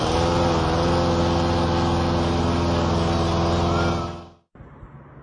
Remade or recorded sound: recorded